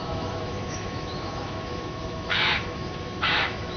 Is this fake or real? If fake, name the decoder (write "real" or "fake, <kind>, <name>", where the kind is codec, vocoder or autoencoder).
fake, autoencoder, DAC-VAE